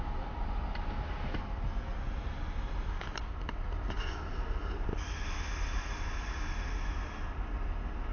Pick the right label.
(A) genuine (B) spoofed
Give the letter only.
A